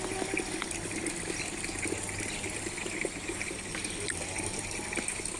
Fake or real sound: real